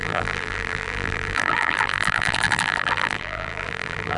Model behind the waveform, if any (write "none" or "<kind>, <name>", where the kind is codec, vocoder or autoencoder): vocoder, BigVGAN v2